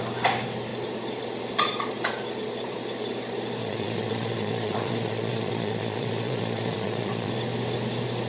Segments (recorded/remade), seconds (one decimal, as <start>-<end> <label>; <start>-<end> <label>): 0.0-3.6 recorded; 3.6-7.3 remade; 7.3-8.3 recorded